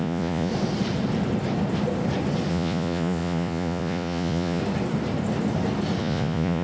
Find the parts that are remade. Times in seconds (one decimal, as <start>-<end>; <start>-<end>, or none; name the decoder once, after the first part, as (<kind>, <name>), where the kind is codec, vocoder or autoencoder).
0.0-0.5 (vocoder, Vocos); 2.5-4.6; 6.0-6.6